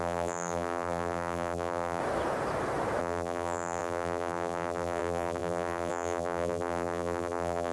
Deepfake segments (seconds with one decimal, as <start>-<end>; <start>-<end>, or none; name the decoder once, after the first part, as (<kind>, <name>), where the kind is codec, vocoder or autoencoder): 0.0-2.0 (vocoder, BigVGAN v2); 3.0-7.7